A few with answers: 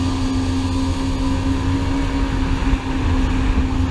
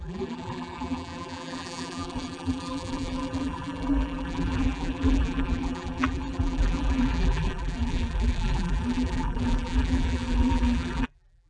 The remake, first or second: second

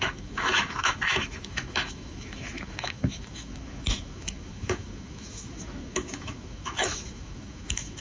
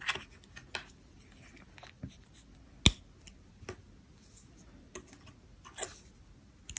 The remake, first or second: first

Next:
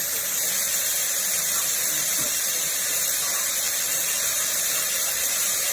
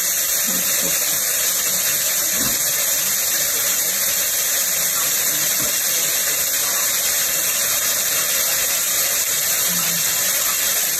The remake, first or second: first